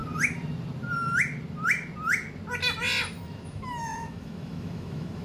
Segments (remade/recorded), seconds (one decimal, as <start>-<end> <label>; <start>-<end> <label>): 0.0-3.1 recorded; 3.1-5.2 remade